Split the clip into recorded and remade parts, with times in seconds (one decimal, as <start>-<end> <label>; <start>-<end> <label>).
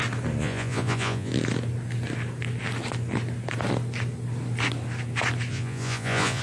0.0-0.4 recorded; 0.4-1.3 remade; 1.3-5.5 recorded; 5.5-6.4 remade